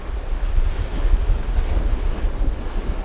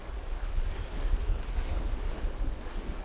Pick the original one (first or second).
first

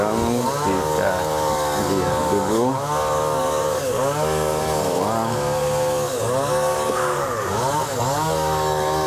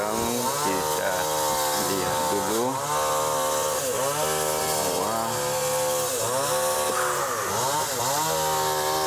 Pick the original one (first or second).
second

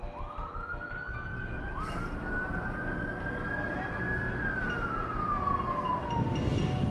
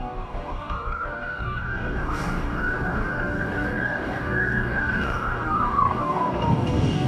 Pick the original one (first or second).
first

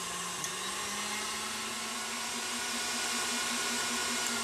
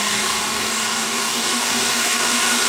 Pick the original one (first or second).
first